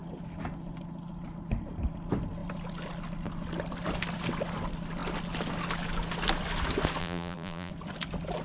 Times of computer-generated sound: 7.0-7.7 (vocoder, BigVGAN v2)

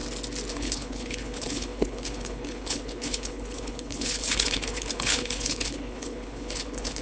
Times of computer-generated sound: 0.5-7.0 (codec, HILCodec)

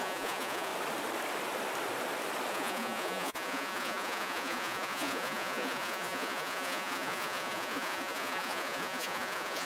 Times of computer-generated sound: 0.0-0.7 (vocoder, Vocos); 2.5-9.7

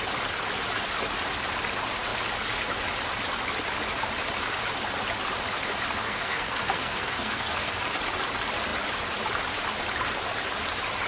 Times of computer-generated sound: 6.0-7.7 (codec, SNAC)

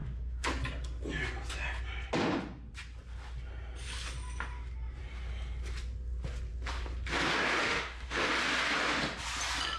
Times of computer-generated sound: 0.0-0.5 (autoencoder, DAC-VAE); 7.6-8.3

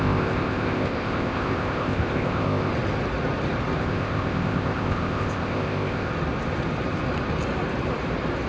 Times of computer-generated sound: 0.0-2.7 (codec, ZipCodec); 3.8-6.1